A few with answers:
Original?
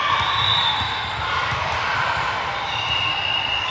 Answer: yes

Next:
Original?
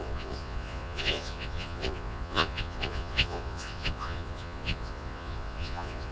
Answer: no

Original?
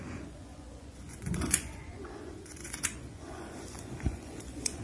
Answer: no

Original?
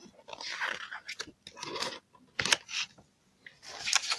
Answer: yes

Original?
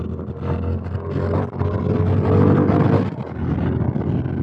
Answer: yes